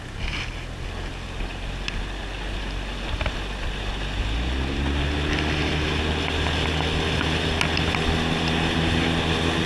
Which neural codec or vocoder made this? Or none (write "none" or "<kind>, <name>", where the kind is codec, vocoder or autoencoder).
none